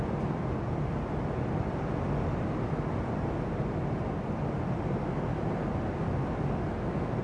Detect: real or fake real